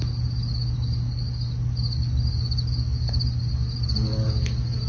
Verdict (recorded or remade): recorded